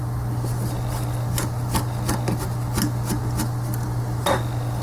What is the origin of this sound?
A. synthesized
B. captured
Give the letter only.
B